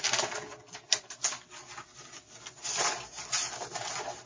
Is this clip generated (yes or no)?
no